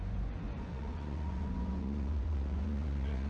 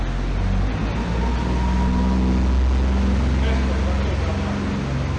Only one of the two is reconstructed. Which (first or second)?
first